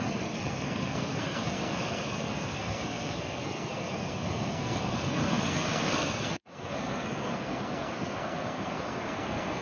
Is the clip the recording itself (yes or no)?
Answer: no